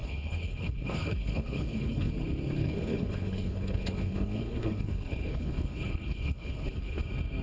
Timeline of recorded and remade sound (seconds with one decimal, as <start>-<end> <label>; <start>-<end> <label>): 0.0-2.1 remade; 2.1-2.6 recorded; 2.6-7.0 remade; 7.0-7.4 recorded